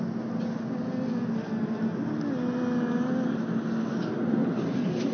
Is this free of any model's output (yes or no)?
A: yes